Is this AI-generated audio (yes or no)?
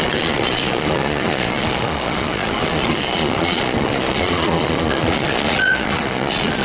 yes